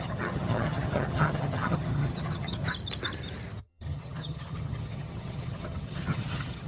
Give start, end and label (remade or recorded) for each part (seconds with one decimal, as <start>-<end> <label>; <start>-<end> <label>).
0.0-2.6 remade; 2.6-3.6 recorded; 3.6-6.7 remade